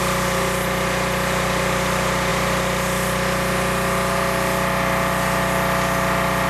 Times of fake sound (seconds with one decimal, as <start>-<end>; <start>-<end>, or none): none